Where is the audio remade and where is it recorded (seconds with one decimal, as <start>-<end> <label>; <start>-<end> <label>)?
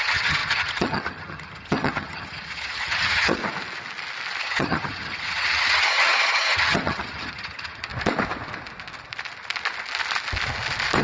0.0-3.4 remade; 3.4-4.4 recorded; 4.4-7.9 remade; 7.9-11.0 recorded